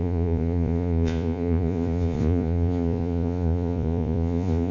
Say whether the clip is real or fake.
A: fake